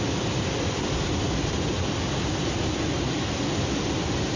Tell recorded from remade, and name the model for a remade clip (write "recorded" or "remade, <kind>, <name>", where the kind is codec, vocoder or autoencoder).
recorded